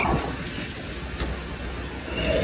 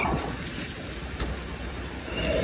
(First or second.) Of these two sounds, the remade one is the second